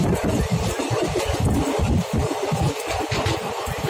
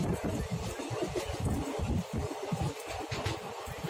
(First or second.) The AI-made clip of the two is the first